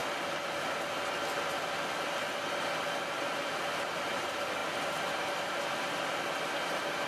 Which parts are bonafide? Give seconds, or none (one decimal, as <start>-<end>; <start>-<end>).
0.0-7.1